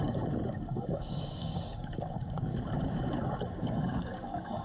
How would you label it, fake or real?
fake